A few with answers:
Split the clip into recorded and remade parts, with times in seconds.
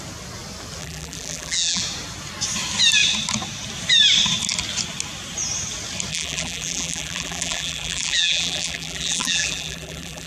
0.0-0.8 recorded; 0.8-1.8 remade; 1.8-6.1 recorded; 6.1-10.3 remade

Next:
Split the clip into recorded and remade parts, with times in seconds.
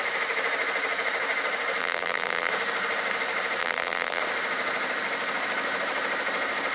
0.0-1.8 recorded; 1.8-2.5 remade; 2.5-3.6 recorded; 3.6-4.2 remade; 4.2-6.7 recorded